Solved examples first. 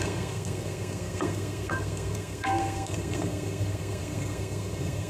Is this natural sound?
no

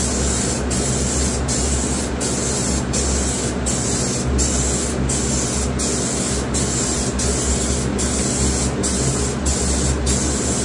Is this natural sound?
yes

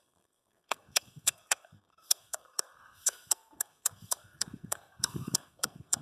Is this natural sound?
no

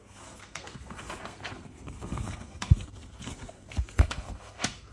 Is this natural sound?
no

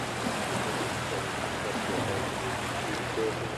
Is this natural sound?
yes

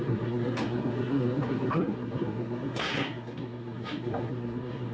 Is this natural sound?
no